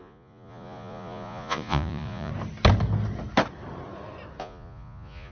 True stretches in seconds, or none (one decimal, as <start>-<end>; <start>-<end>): 2.3-4.4